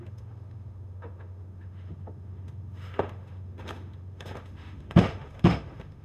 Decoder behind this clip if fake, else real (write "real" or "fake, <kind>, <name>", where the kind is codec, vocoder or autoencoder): fake, autoencoder, DAC-VAE